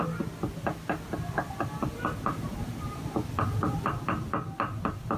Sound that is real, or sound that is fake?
real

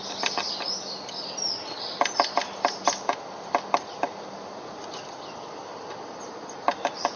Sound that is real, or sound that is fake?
real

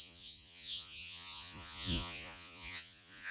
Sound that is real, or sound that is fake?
fake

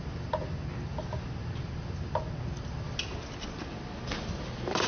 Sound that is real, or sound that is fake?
real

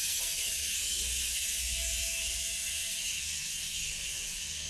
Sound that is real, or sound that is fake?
fake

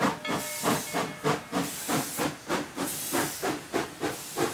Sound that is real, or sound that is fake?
real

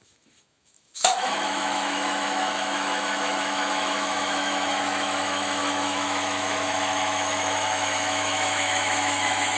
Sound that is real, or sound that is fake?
fake